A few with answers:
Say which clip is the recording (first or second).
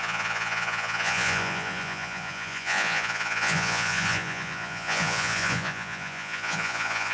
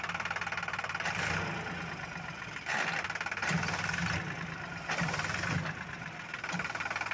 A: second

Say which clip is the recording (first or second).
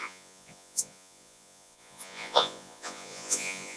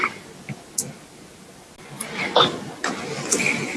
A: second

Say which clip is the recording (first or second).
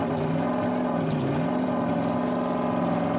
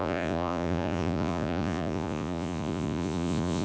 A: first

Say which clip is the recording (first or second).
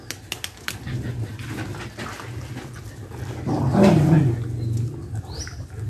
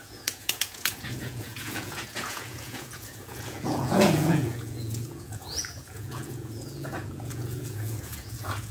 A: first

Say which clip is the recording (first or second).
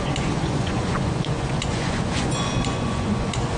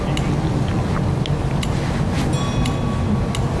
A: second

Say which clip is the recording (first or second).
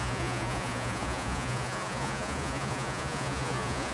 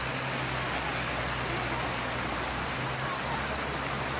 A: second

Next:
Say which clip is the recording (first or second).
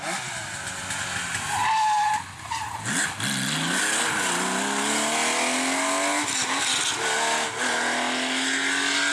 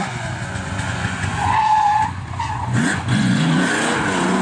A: first